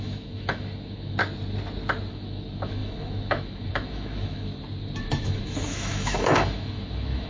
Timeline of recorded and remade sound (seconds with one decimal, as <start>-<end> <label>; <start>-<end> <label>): 0.0-1.2 remade; 1.2-2.1 recorded; 2.1-4.5 remade; 4.5-5.0 recorded; 5.0-7.3 remade